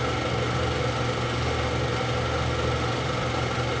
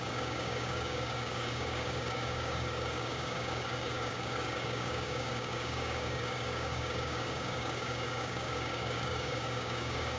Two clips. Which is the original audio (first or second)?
first